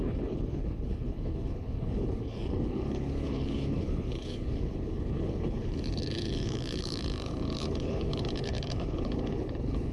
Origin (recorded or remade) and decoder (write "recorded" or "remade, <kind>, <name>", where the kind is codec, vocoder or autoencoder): remade, codec, HILCodec